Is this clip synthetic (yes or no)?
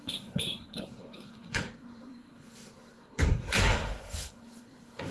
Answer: yes